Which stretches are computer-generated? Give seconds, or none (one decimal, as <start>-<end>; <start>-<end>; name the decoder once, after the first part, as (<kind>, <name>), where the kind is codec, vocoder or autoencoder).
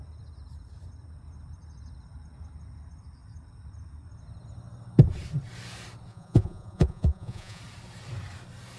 6.1-7.6 (vocoder, Vocos)